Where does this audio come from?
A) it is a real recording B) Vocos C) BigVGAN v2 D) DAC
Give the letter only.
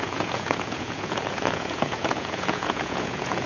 B